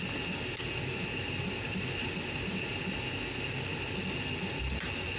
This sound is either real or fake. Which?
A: real